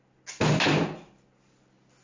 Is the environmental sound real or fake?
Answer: real